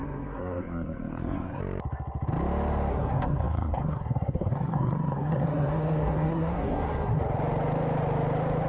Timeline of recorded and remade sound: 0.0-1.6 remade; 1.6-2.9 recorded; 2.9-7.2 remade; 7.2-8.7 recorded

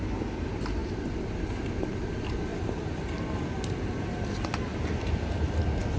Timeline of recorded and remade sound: 0.0-6.0 recorded

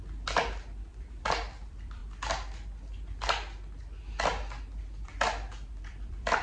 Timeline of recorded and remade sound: 0.0-2.0 remade; 2.0-5.8 recorded; 5.8-6.4 remade

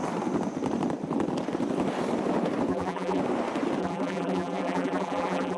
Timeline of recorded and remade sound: 0.0-2.7 recorded; 2.7-3.2 remade; 3.2-3.8 recorded; 3.8-5.6 remade

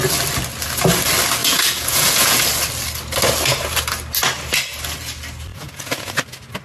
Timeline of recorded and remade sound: 0.0-1.4 recorded; 1.4-2.4 remade; 2.4-5.5 recorded; 5.5-6.1 remade; 6.1-6.6 recorded

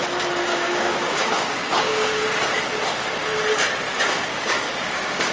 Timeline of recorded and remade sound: 0.0-0.5 recorded; 0.5-2.2 remade; 2.2-3.9 recorded; 3.9-5.3 remade